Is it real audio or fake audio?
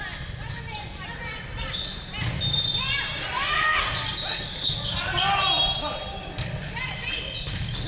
real